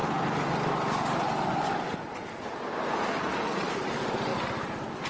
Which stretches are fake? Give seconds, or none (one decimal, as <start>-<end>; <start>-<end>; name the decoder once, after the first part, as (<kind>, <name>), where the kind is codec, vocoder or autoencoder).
none